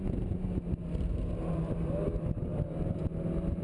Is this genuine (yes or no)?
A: no